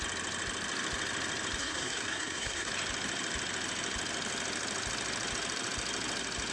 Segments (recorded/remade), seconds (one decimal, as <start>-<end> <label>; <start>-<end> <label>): 0.0-1.6 recorded; 1.6-2.7 remade; 2.7-6.5 recorded